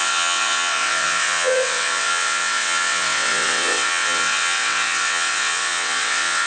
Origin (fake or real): fake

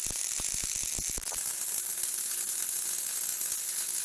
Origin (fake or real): real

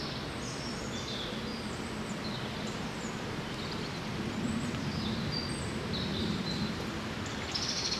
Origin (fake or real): real